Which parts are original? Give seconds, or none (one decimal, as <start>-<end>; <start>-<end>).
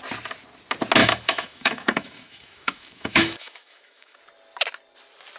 0.0-1.0; 4.2-5.4